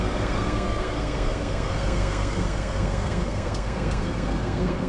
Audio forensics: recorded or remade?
remade